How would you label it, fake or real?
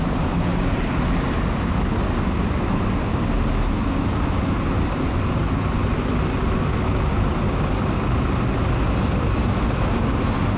real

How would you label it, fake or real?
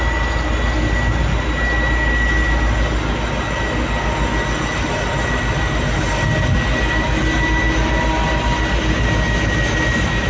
real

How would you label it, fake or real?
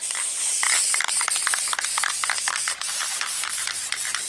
real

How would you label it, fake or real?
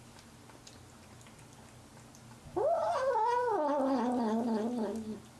real